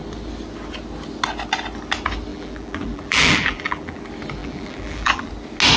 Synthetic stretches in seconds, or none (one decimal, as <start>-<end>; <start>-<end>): 2.3-4.0; 4.4-5.3